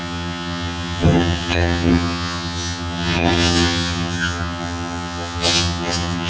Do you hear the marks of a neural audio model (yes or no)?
yes